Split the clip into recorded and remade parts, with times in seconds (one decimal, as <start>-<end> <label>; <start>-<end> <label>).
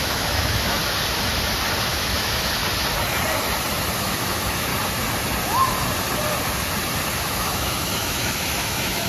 0.0-0.8 remade; 0.8-1.9 recorded; 1.9-2.6 remade; 2.6-3.9 recorded; 3.9-4.7 remade; 4.7-7.1 recorded; 7.1-9.1 remade